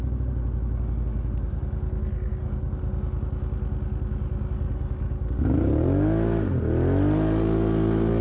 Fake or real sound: real